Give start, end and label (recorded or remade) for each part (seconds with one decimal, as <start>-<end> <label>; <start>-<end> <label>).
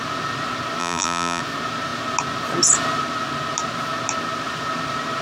0.0-0.8 recorded; 0.8-1.4 remade; 1.4-5.2 recorded